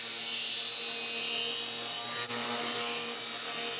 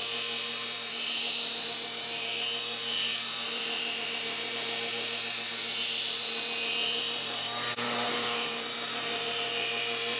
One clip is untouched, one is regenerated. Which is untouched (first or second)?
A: first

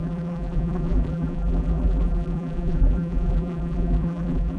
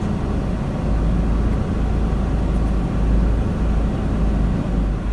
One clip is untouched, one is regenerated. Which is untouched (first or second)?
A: second